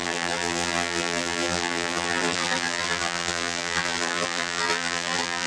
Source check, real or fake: fake